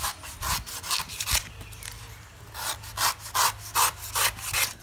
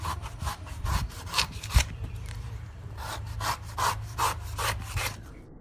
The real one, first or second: first